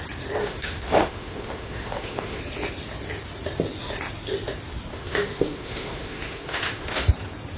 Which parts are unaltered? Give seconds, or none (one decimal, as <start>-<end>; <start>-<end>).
0.0-0.4; 2.4-4.9; 7.0-7.6